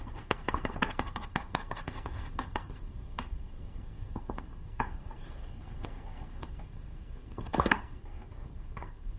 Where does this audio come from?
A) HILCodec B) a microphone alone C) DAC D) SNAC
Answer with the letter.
D